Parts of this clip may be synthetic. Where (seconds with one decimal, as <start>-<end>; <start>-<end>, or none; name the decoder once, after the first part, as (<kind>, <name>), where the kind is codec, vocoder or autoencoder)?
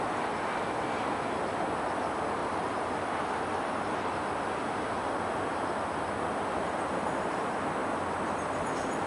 2.4-4.1 (vocoder, BigVGAN v2)